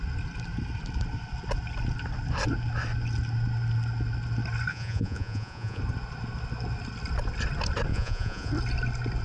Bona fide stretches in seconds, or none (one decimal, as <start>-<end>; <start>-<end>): 0.0-4.7; 5.8-7.9; 8.5-9.2